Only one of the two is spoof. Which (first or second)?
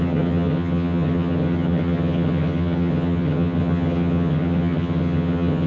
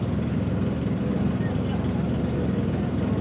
first